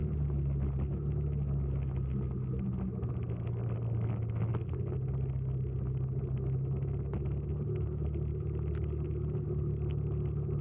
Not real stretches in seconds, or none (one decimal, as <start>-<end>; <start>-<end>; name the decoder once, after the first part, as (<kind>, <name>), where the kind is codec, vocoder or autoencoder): none